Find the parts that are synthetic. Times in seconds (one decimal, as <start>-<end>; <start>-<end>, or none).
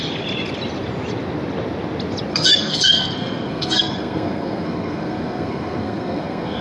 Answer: 2.3-6.6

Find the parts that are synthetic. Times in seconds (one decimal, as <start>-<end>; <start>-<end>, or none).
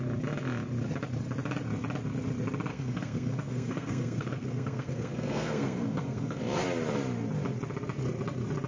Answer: 2.7-6.4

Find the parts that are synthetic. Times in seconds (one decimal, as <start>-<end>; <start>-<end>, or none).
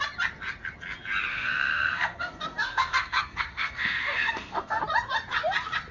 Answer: 1.3-4.8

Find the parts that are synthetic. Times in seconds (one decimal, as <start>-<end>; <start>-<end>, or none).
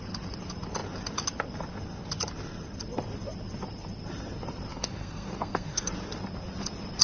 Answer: 4.7-5.9